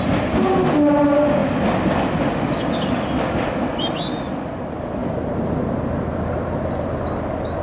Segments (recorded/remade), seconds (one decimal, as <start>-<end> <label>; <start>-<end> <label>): 0.0-7.6 recorded

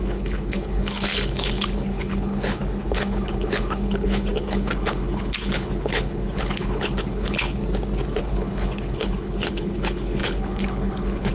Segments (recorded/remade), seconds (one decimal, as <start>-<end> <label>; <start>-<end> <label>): 0.0-7.6 remade; 7.6-8.2 recorded; 8.2-11.3 remade

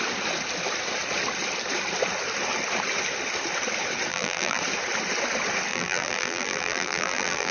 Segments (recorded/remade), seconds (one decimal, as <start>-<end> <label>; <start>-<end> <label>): 0.0-4.1 recorded; 4.1-4.6 remade; 4.6-5.7 recorded; 5.7-7.5 remade

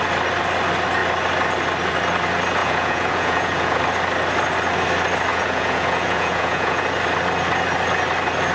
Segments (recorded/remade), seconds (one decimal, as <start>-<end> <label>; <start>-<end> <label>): 0.0-2.6 recorded; 2.6-3.8 remade; 3.8-5.3 recorded; 5.3-6.8 remade; 6.8-8.5 recorded

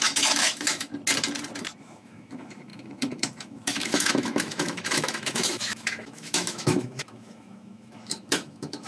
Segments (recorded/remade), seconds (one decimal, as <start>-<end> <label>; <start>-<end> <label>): 0.0-0.9 remade; 0.9-1.8 recorded; 1.8-8.9 remade

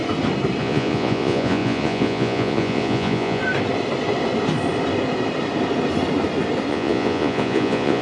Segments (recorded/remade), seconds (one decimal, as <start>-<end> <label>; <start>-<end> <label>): 0.0-0.6 recorded; 0.6-3.4 remade; 3.4-6.7 recorded; 6.7-8.0 remade